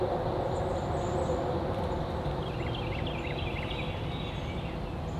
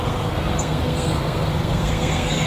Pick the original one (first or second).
first